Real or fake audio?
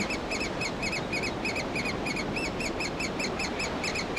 fake